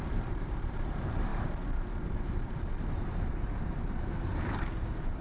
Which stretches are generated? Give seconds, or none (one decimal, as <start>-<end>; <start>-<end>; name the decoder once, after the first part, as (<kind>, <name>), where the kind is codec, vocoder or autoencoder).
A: 0.0-1.3 (vocoder, BigVGAN v2); 4.4-5.2